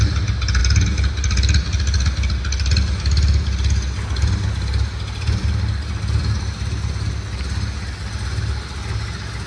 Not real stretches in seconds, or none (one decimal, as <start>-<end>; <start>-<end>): none